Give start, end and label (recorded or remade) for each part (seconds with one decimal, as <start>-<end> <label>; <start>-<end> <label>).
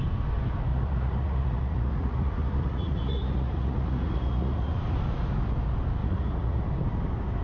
0.0-0.7 recorded; 0.7-4.7 remade; 4.7-6.0 recorded; 6.0-6.6 remade; 6.6-7.4 recorded